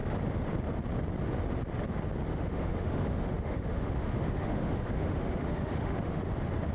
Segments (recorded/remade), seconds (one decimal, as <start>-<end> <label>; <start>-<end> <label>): 0.0-2.3 recorded; 2.3-6.3 remade; 6.3-6.7 recorded